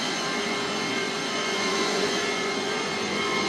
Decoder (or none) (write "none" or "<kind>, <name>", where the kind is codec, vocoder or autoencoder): vocoder, Vocos